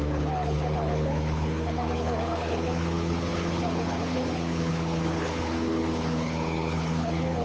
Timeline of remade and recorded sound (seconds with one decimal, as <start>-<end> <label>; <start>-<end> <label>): 0.0-7.4 remade